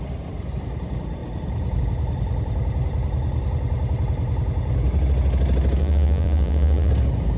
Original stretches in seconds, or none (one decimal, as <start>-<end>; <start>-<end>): 0.0-5.8; 6.9-7.4